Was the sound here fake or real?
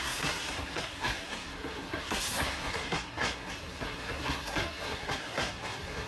fake